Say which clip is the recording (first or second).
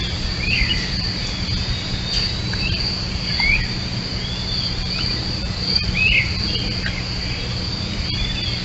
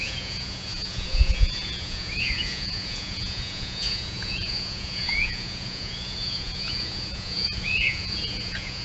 first